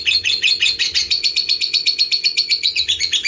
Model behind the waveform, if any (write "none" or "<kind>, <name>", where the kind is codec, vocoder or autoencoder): vocoder, Vocos